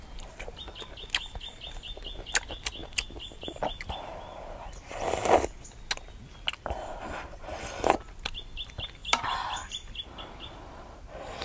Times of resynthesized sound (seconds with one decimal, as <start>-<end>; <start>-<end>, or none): 9.0-10.2